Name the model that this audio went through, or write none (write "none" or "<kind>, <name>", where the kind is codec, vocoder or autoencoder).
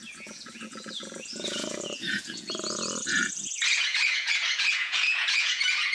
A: vocoder, Vocos